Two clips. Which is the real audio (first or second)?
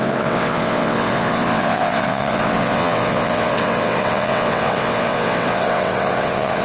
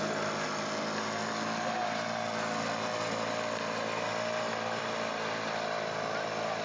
second